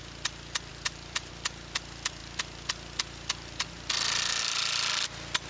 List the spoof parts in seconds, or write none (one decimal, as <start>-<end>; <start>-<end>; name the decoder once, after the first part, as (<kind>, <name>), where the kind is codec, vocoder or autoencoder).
0.7-1.3 (vocoder, BigVGAN v2)